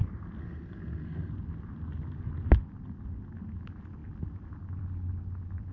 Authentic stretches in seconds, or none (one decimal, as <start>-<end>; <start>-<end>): 0.0-0.4; 1.3-5.7